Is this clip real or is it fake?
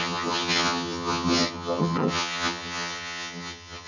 fake